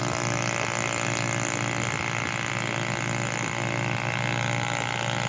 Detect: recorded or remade recorded